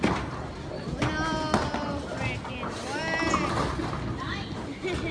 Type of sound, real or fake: real